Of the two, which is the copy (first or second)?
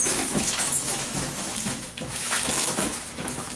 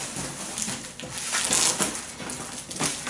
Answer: first